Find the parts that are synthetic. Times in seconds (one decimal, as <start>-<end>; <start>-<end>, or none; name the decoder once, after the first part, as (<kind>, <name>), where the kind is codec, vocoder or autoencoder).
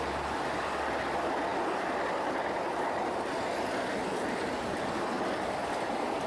none